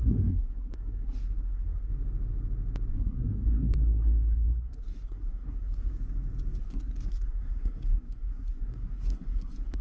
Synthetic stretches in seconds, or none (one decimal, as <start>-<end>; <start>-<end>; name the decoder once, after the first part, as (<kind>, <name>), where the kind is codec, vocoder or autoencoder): 0.0-1.9 (codec, SNAC); 2.9-5.9; 6.6-9.8